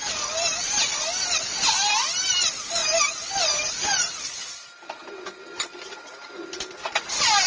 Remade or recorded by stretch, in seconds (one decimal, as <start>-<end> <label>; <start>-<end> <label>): 0.0-0.5 recorded; 0.5-1.9 remade; 1.9-7.5 recorded